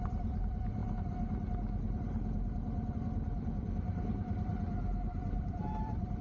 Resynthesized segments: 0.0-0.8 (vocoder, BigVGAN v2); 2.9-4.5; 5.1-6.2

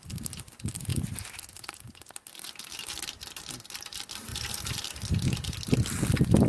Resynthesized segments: none

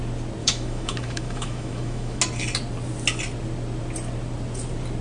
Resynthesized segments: 0.4-2.2 (autoencoder, DAC-VAE)

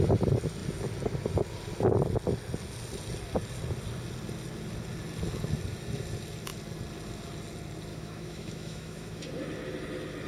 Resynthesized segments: 7.9-9.2 (autoencoder, DAC-VAE)

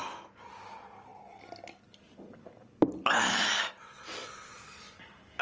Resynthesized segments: none

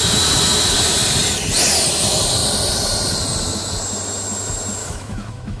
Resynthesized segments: 4.8-5.6 (autoencoder, DAC-VAE)

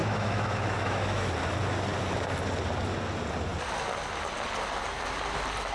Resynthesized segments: 0.0-1.3 (autoencoder, DAC-VAE)